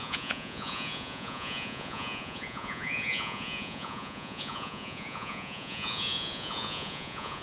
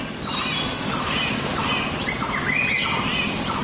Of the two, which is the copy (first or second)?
first